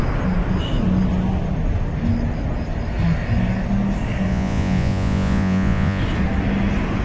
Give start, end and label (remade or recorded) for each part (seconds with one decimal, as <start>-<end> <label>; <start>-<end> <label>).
0.0-4.3 recorded; 4.3-6.0 remade; 6.0-7.0 recorded